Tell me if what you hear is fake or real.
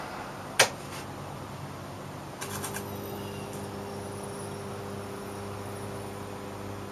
real